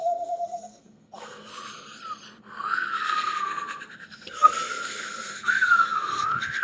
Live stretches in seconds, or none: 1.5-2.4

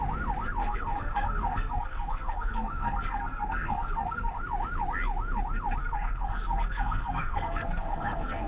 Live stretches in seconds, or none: 0.0-0.6; 4.4-5.8

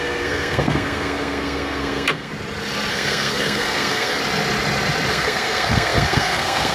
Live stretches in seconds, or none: 2.3-2.9; 4.2-5.1

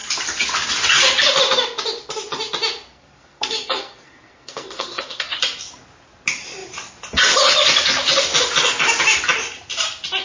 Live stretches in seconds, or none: 0.0-2.9; 5.4-10.2

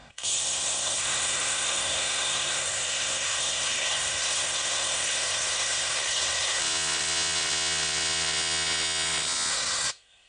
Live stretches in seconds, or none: 6.6-9.5

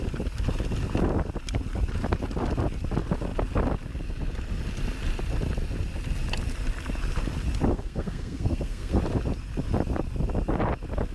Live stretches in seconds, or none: 0.0-7.7; 9.0-11.1